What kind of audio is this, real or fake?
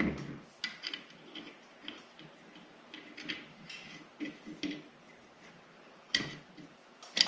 real